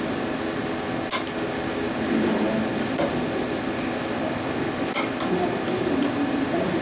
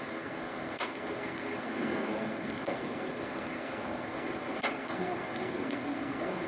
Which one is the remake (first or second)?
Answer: second